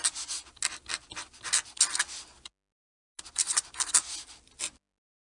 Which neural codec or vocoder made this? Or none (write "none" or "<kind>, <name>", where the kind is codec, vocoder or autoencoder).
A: none